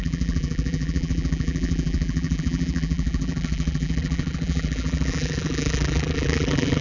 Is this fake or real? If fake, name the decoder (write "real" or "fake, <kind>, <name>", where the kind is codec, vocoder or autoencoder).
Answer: fake, vocoder, BigVGAN v2